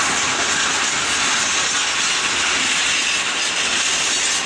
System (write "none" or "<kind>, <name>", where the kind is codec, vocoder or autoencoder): none